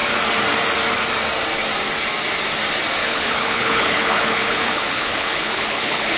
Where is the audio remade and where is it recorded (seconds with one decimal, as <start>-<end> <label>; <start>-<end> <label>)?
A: 0.0-3.0 recorded; 3.0-6.2 remade